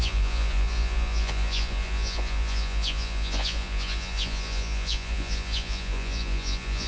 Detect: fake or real fake